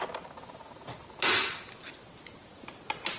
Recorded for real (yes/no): yes